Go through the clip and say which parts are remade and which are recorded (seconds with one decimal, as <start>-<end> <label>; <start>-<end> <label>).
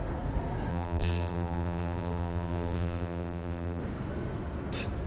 0.0-0.7 recorded; 0.7-3.8 remade; 3.8-5.1 recorded